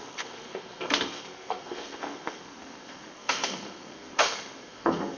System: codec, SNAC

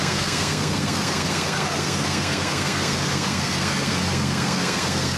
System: codec, SNAC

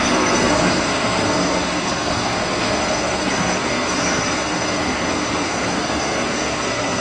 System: codec, SNAC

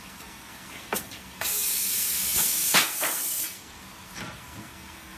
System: codec, SNAC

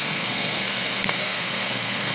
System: codec, SNAC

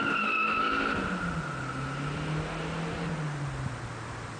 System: none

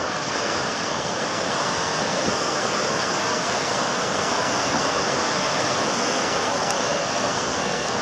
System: codec, SNAC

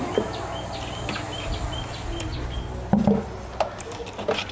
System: none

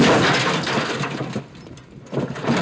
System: none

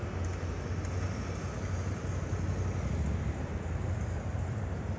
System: none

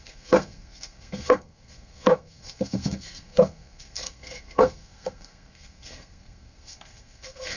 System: codec, SNAC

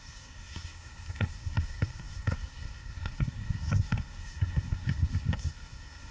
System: codec, SNAC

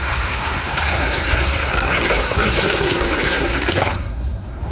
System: codec, SNAC